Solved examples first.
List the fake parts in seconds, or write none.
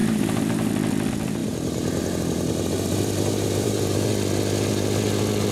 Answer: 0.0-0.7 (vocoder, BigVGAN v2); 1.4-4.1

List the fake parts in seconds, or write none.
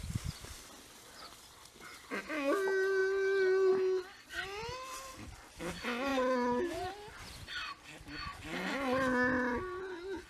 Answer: none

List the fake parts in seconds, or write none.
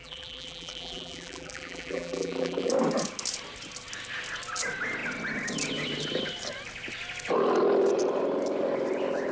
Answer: 0.0-2.7 (vocoder, BigVGAN v2)